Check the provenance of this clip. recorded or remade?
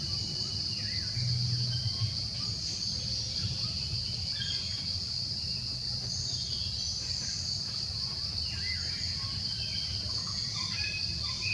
remade